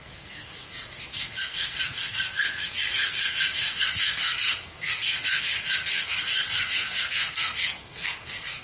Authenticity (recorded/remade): remade